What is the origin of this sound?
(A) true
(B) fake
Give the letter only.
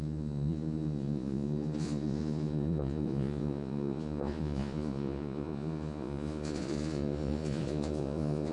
B